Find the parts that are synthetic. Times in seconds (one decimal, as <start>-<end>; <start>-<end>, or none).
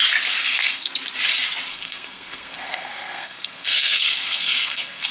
0.4-0.9; 1.7-5.1